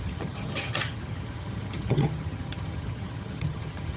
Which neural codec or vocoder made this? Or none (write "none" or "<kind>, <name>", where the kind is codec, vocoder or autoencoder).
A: vocoder, HiFi-GAN